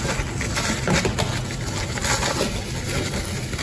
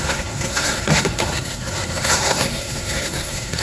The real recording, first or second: first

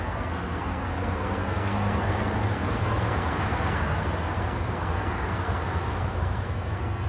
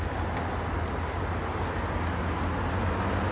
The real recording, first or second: second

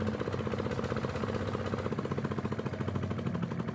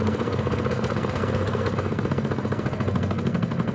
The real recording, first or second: first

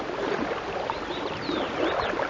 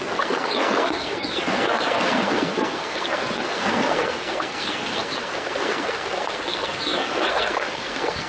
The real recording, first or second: first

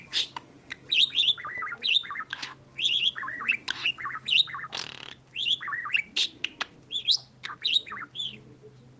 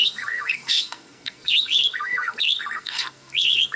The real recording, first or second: first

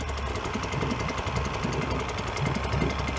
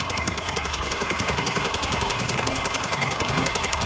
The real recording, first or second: first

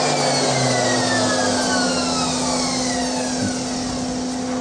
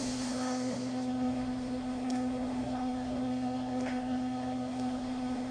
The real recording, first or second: first